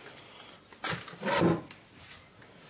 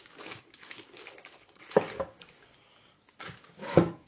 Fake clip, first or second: second